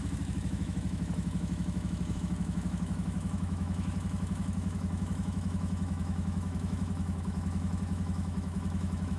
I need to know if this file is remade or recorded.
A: remade